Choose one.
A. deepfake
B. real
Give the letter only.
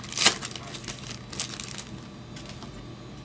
B